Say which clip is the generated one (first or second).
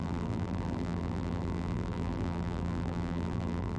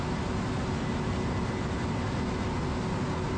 first